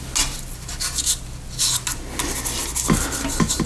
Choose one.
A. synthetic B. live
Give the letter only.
B